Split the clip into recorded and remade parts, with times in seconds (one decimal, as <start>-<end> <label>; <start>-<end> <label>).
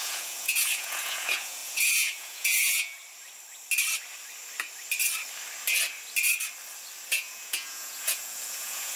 0.0-3.0 remade; 3.0-7.1 recorded; 7.1-9.0 remade